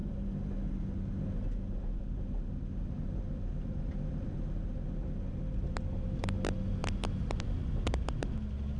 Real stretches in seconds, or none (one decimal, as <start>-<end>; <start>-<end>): 0.0-8.8